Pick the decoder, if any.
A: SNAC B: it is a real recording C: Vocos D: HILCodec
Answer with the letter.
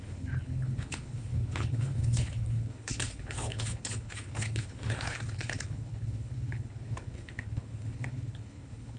D